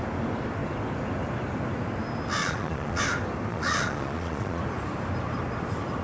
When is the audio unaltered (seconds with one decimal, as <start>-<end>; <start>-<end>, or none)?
0.0-2.4; 3.0-3.5; 4.6-6.0